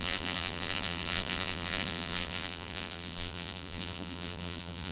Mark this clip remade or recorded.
remade